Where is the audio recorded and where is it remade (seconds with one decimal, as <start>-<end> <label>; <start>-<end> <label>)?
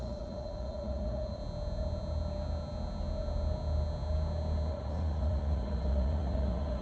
0.0-1.4 remade; 1.4-4.7 recorded; 4.7-6.8 remade